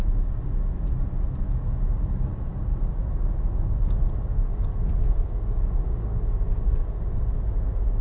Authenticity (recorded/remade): recorded